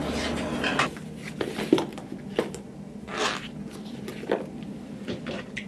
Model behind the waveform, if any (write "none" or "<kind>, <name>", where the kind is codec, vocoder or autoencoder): none